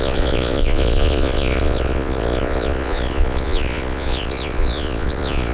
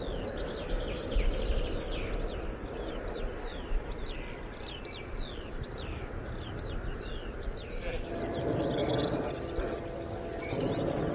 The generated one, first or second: first